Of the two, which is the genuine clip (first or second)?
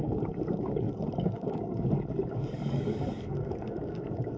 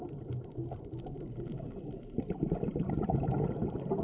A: second